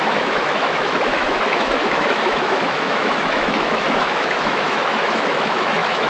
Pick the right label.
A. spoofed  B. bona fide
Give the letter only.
A